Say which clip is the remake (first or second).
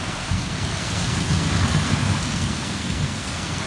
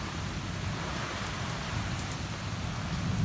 first